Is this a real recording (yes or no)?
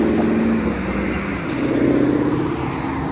yes